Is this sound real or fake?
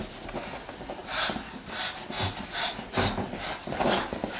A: real